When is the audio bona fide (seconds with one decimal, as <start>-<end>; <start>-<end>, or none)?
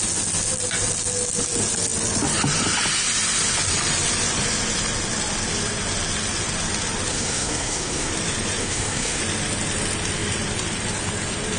0.0-7.1; 8.1-8.6; 9.2-11.6